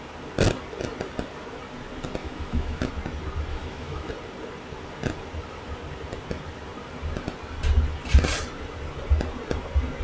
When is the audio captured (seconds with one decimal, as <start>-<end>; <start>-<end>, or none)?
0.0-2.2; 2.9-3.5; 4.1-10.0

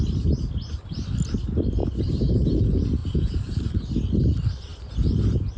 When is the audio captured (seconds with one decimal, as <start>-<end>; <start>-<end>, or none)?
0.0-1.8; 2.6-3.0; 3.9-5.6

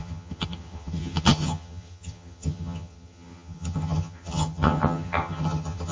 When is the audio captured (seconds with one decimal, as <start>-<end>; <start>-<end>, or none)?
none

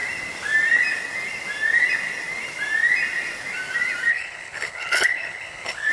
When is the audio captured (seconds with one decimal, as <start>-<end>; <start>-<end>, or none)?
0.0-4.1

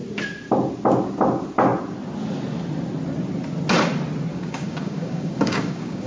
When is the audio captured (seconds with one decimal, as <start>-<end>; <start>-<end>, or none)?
0.0-4.3